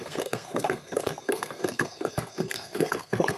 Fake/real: fake